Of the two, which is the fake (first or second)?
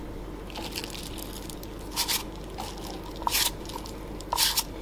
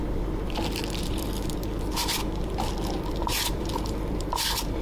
second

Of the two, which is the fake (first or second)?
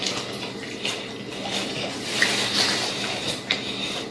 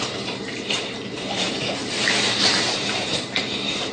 second